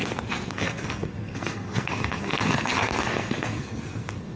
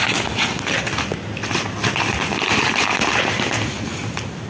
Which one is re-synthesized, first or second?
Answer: first